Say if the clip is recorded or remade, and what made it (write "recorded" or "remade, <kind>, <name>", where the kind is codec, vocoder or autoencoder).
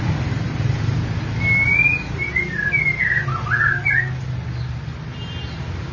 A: recorded